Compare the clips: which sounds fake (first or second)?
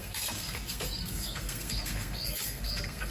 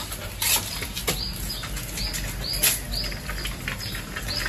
first